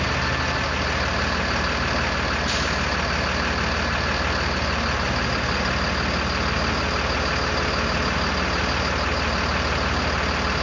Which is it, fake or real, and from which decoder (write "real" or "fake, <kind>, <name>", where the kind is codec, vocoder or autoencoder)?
real